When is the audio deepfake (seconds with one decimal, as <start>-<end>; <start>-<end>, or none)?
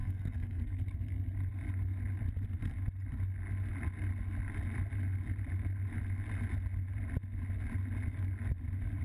0.0-0.8